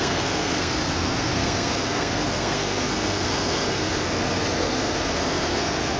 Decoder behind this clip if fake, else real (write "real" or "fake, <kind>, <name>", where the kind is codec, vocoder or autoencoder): fake, codec, SNAC